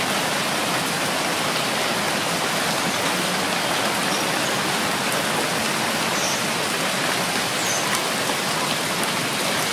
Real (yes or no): yes